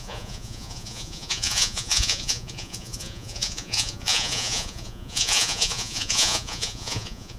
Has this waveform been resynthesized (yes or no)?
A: yes